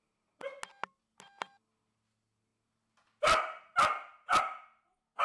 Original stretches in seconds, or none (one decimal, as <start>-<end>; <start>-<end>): 0.0-5.2